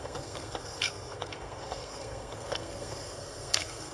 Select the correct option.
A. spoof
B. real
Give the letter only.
A